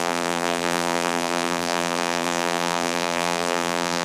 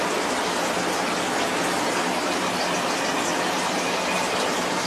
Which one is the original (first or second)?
second